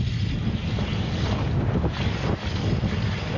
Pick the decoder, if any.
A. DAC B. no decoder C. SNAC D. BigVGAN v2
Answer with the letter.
B